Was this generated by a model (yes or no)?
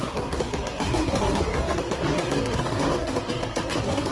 yes